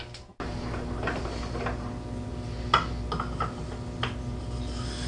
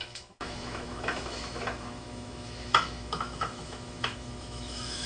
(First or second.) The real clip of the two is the first